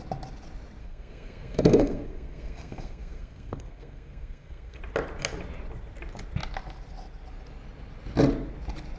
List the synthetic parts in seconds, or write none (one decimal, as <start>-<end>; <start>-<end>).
0.8-4.8